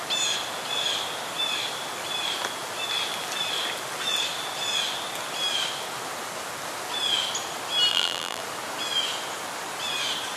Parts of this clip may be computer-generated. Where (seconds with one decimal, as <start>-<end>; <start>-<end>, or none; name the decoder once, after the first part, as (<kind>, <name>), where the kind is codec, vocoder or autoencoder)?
7.9-8.4 (vocoder, BigVGAN v2)